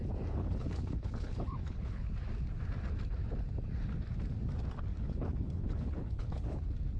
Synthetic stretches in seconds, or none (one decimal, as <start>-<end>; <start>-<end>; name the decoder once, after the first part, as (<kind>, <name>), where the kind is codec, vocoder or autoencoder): 0.4-2.1 (codec, HILCodec); 4.9-6.6